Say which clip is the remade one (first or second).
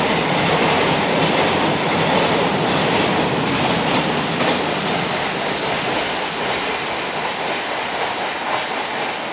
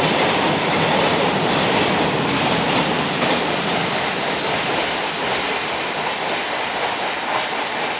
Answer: second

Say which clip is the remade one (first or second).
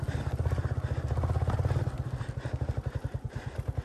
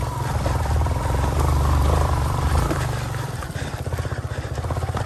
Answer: second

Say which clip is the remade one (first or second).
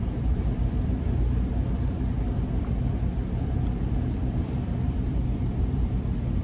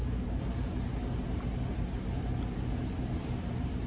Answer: first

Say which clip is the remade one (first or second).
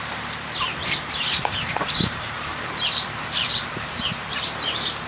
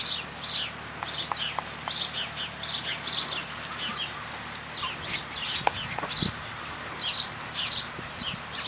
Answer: first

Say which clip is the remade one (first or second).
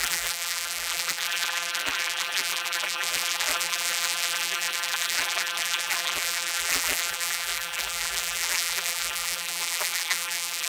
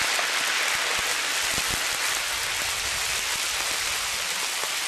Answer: first